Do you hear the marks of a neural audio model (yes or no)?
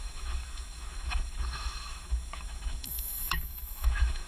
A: yes